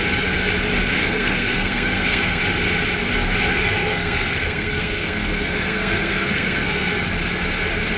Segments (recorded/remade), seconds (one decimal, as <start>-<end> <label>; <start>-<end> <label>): 0.0-1.0 recorded; 1.0-2.4 remade; 2.4-3.5 recorded; 3.5-6.9 remade; 6.9-8.0 recorded